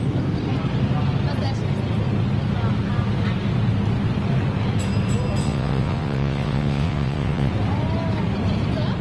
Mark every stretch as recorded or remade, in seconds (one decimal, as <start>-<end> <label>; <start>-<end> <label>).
0.0-5.4 recorded; 5.4-7.5 remade; 7.5-9.0 recorded